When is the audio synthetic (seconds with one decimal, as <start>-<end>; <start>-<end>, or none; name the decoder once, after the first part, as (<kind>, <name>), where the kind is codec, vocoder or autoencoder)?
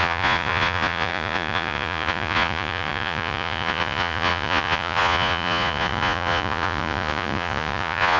0.0-8.2 (vocoder, Vocos)